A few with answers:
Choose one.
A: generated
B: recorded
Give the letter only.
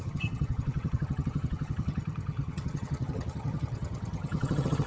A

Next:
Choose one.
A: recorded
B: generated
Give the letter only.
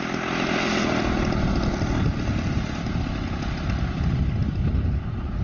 A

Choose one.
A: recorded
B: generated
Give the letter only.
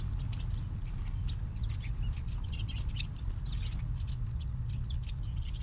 A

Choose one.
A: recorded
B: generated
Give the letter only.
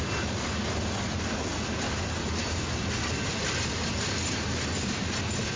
A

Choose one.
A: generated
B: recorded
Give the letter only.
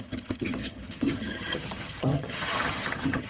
A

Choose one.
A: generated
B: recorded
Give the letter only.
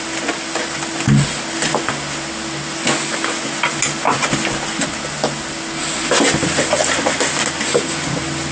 B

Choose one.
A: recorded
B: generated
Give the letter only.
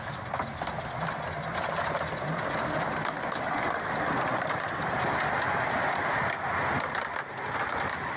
A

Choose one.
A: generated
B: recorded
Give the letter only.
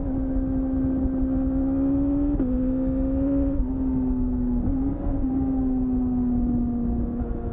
B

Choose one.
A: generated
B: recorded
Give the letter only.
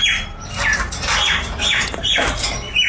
B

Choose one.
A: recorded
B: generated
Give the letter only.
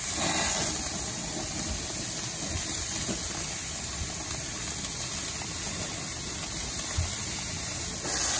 A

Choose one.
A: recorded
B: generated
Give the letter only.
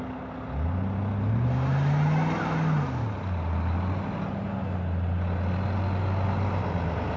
A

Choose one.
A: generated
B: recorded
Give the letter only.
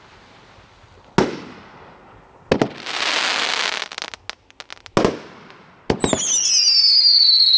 B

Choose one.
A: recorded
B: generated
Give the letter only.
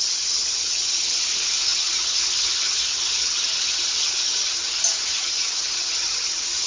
B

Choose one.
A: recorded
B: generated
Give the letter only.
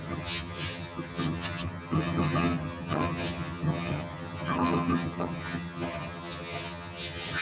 B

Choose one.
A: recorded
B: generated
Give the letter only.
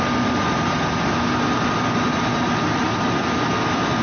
A